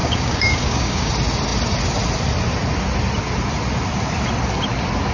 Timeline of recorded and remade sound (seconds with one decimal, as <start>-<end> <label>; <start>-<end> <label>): 0.0-1.1 remade; 1.1-5.1 recorded